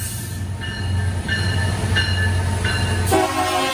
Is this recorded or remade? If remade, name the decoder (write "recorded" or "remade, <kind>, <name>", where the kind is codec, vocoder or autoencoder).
recorded